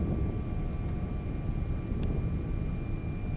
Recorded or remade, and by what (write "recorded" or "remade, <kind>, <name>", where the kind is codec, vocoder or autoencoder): recorded